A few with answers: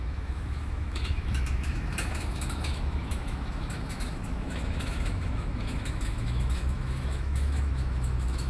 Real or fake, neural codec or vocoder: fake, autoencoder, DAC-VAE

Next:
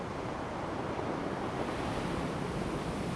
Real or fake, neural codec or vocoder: real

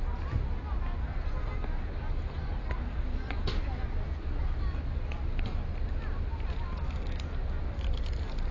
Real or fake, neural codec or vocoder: real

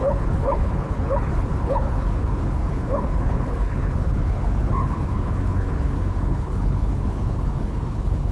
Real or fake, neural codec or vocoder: fake, codec, HILCodec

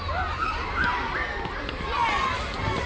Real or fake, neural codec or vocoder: real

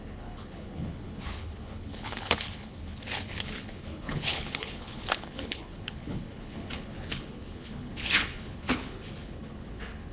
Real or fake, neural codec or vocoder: fake, codec, HILCodec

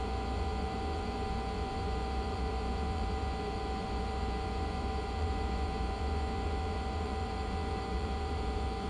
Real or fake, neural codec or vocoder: fake, vocoder, Vocos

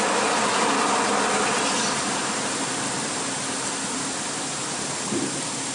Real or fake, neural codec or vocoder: real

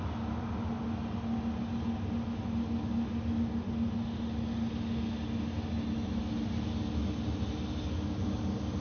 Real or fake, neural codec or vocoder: real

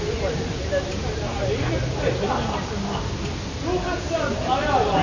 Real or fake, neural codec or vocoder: real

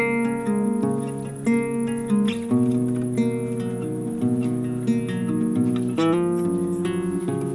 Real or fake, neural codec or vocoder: real